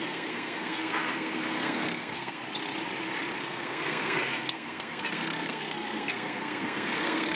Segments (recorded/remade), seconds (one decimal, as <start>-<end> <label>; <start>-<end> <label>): 0.0-2.4 remade; 2.4-3.4 recorded; 3.4-7.3 remade

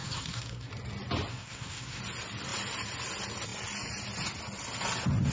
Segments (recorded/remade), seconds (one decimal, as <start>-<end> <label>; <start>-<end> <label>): 0.0-0.7 remade; 0.7-1.3 recorded; 1.3-2.0 remade; 2.0-5.3 recorded

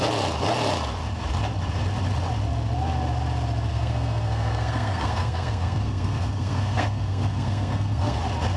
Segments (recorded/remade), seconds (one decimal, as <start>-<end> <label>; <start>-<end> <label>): 0.0-3.7 recorded; 3.7-8.2 remade; 8.2-8.6 recorded